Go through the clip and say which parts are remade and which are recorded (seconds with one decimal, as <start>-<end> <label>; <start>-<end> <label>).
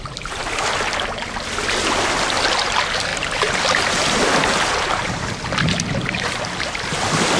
0.0-3.1 recorded; 3.1-3.9 remade; 3.9-7.4 recorded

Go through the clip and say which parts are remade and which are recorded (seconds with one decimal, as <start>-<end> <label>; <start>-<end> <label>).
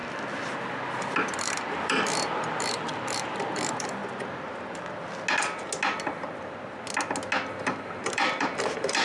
0.0-1.4 recorded; 1.4-4.0 remade; 4.0-8.1 recorded; 8.1-9.0 remade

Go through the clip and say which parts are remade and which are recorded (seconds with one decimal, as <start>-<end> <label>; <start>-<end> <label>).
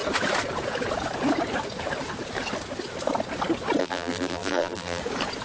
0.0-3.8 recorded; 3.8-5.0 remade; 5.0-5.4 recorded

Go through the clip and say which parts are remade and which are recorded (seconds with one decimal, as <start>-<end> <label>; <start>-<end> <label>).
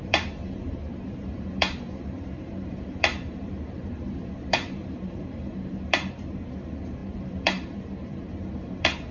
0.0-9.1 remade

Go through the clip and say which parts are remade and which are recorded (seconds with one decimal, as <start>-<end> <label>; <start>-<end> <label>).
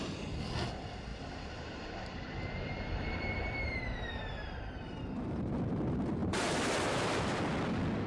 0.0-1.1 recorded; 1.1-5.0 remade; 5.0-6.2 recorded; 6.2-7.4 remade; 7.4-8.1 recorded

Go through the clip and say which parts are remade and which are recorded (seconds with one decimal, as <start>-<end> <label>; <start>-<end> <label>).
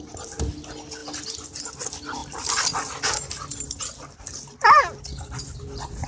0.0-1.0 recorded; 1.0-1.6 remade; 1.6-2.2 recorded; 2.2-6.1 remade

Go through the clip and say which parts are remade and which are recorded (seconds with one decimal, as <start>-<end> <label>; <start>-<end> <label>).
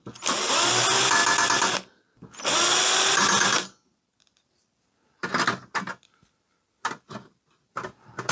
0.0-8.3 recorded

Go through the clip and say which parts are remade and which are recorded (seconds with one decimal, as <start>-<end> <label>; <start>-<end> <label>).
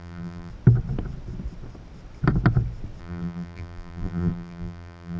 0.0-0.5 remade; 0.5-3.0 recorded; 3.0-5.2 remade